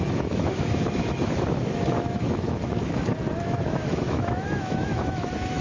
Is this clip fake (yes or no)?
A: yes